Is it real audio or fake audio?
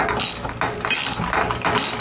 real